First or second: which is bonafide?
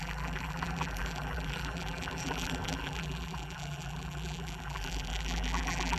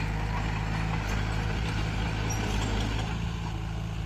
second